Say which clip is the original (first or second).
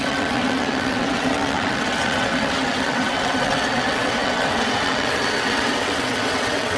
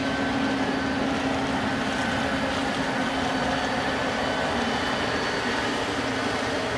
second